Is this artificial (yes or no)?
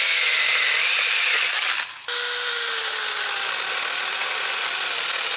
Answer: no